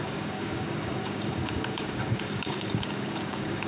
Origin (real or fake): fake